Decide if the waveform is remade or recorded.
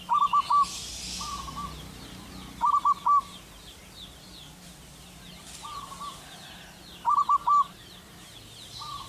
recorded